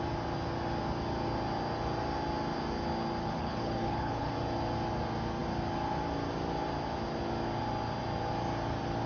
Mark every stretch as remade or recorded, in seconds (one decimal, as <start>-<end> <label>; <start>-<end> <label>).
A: 0.0-3.2 recorded; 3.2-4.3 remade; 4.3-9.1 recorded